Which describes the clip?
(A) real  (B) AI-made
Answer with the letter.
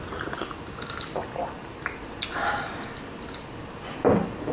A